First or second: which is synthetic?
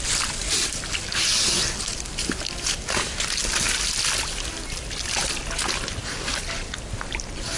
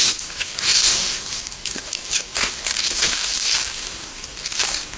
second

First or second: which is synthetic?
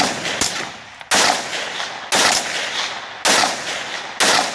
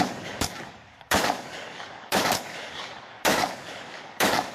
second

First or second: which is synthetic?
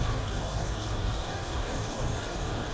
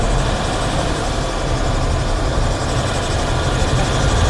first